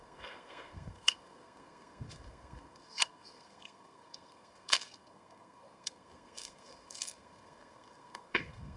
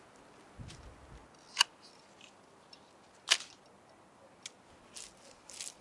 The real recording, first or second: second